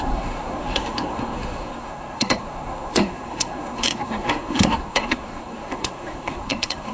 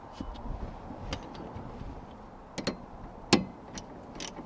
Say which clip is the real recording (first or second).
second